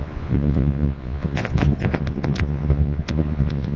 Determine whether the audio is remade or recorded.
remade